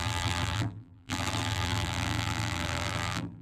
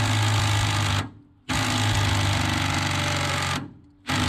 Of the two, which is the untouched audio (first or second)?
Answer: second